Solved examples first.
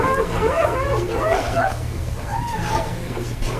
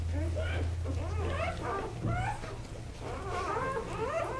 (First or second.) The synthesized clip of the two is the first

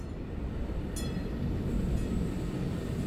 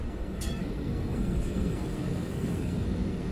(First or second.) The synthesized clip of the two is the second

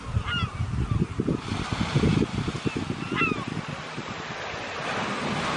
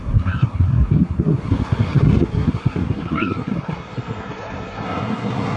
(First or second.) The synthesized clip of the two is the second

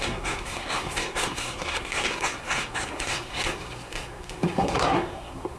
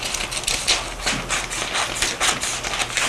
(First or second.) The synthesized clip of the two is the first